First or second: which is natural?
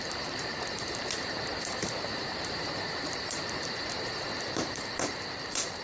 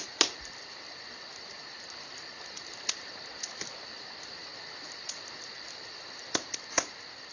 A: second